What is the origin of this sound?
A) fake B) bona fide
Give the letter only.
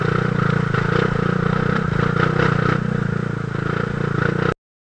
B